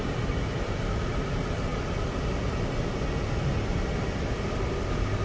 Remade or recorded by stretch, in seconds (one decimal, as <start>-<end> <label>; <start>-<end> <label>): 0.0-1.1 remade; 1.1-5.2 recorded